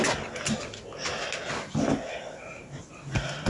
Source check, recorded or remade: recorded